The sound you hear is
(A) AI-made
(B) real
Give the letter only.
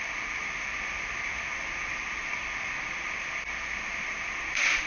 A